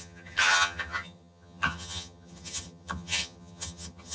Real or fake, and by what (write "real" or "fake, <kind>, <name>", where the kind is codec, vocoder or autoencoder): fake, vocoder, HiFi-GAN